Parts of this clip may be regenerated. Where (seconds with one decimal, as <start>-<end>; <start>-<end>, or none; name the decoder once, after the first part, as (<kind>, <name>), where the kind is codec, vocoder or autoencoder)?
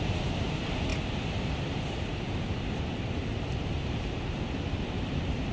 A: none